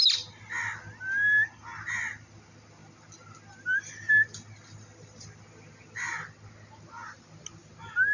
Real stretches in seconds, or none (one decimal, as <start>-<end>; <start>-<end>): 0.0-8.1